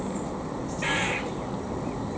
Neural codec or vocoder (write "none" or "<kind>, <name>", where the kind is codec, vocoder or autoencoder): none